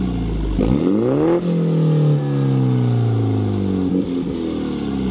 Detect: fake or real real